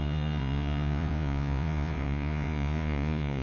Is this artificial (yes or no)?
yes